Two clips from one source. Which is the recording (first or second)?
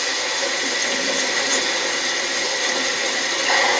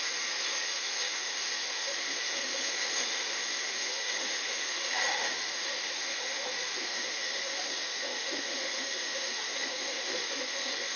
first